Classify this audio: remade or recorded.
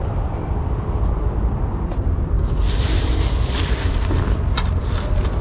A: recorded